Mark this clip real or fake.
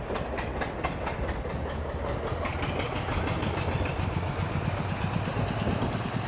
real